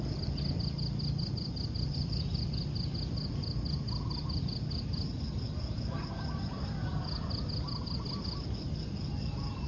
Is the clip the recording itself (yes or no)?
yes